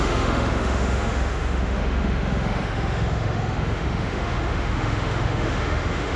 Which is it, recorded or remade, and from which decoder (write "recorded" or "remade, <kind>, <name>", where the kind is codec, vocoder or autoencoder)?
remade, autoencoder, DAC-VAE